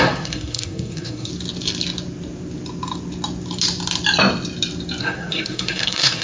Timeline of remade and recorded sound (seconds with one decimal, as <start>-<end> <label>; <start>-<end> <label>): 0.0-1.3 remade; 1.3-5.0 recorded; 5.0-6.2 remade